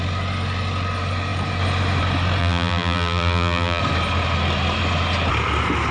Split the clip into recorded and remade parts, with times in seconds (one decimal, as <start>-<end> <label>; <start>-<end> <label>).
0.0-2.4 recorded; 2.4-3.8 remade; 3.8-5.9 recorded